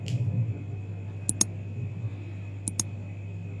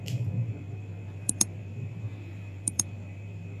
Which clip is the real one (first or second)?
first